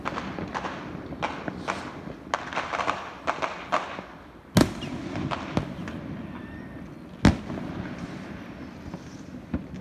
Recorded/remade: recorded